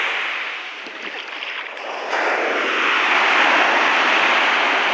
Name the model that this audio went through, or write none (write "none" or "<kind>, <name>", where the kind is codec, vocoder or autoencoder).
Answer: none